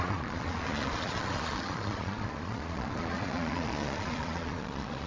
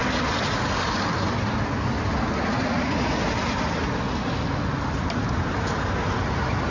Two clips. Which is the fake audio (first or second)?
first